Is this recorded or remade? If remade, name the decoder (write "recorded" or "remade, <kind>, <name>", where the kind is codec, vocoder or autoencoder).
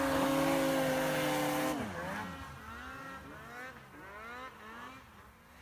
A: recorded